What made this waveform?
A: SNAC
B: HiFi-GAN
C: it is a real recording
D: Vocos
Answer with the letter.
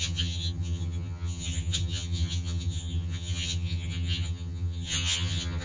B